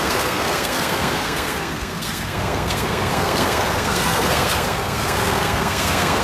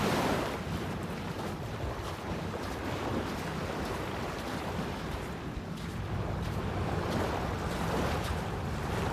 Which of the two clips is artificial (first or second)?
first